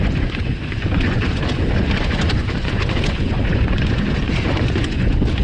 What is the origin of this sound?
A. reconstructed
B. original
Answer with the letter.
A